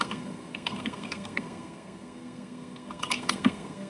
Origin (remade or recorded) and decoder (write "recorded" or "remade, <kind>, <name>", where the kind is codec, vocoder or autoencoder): remade, codec, SNAC